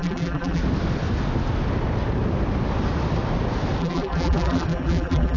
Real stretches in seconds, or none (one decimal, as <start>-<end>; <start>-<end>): 0.6-3.8

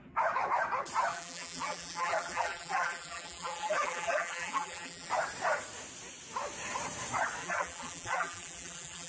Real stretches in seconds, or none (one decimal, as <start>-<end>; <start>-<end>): 0.0-1.1; 5.1-7.4

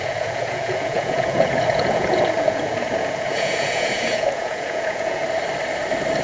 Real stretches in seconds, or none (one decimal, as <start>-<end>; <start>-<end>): 5.2-6.2

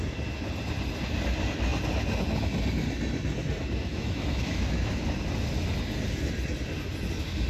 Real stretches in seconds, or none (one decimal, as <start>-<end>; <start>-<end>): 0.0-3.9; 4.9-7.5

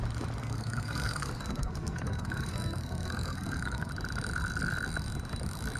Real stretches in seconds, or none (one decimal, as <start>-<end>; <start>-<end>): 0.0-0.4; 3.9-5.8

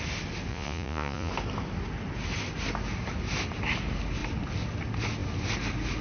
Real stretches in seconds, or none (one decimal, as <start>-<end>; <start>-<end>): 0.0-0.5; 1.3-6.0

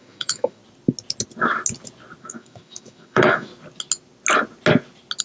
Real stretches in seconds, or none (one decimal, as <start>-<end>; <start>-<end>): 0.6-2.2; 3.5-5.2

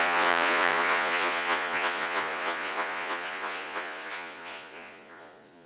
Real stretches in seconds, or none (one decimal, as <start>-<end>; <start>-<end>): none